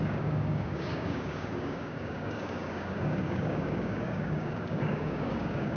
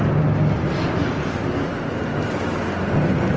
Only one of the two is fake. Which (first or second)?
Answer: first